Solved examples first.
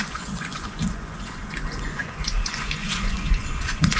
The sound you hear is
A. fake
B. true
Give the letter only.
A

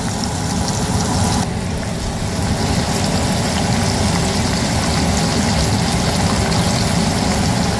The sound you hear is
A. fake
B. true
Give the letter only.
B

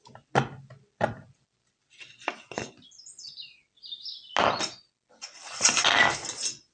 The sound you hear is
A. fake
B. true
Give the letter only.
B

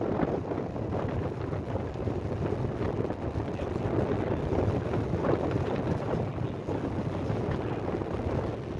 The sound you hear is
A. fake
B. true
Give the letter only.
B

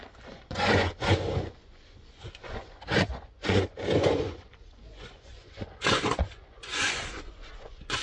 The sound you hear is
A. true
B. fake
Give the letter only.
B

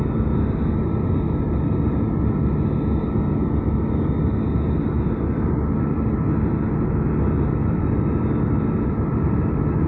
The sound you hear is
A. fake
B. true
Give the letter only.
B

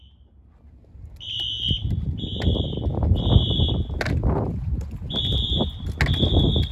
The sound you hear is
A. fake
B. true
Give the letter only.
B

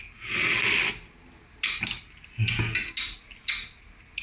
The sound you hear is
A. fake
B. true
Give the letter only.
B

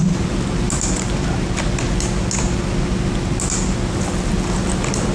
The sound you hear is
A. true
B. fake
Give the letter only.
A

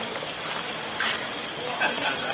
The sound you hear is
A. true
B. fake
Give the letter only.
A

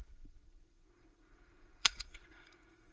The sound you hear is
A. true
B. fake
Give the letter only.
B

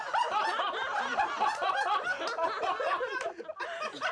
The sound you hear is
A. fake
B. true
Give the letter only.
B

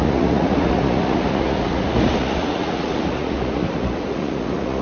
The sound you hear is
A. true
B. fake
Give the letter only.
B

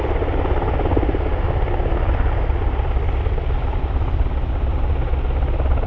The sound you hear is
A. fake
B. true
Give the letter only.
B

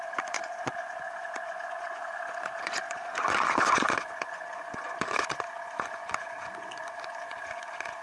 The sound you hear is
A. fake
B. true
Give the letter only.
A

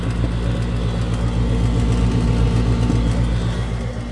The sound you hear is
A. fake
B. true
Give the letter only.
B